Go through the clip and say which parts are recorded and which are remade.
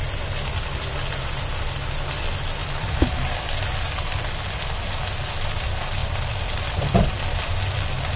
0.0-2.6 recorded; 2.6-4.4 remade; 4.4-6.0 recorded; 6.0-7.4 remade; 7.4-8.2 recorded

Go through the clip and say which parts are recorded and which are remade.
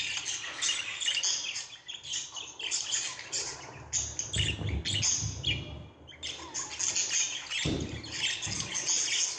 0.0-9.4 recorded